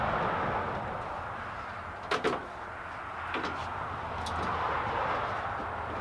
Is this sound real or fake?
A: real